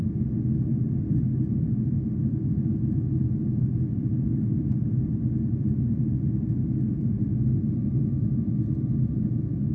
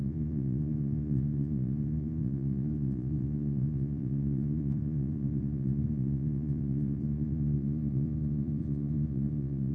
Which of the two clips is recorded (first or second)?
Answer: first